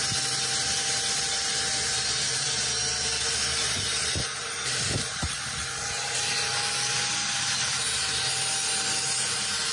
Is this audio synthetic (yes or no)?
no